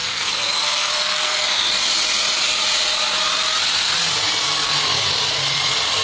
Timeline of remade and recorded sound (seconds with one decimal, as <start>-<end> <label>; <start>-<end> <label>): 0.0-1.7 remade; 1.7-6.0 recorded